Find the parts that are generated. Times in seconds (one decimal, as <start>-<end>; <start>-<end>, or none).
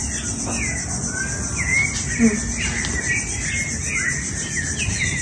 none